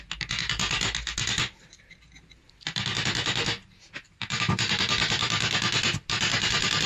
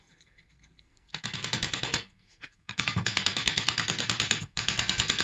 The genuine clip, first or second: first